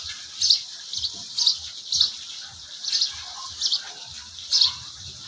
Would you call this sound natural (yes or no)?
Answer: yes